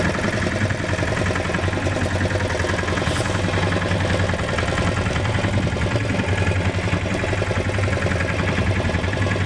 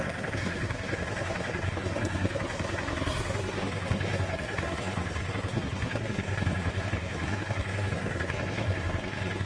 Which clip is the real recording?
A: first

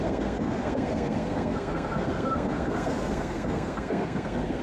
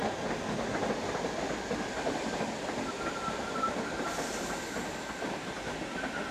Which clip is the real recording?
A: second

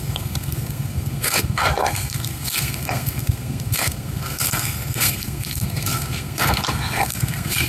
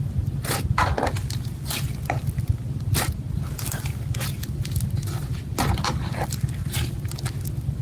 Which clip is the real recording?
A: second